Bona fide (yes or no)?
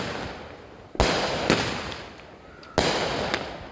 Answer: yes